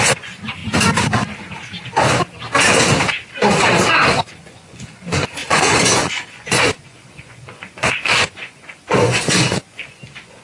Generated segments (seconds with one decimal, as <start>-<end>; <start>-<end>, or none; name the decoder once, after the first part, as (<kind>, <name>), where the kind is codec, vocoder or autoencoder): 0.0-0.6 (vocoder, Vocos); 4.3-10.4